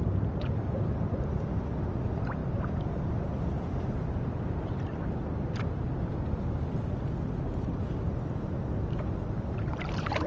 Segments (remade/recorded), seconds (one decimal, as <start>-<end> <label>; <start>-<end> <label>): 0.0-10.3 recorded